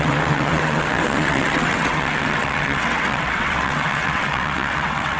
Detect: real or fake fake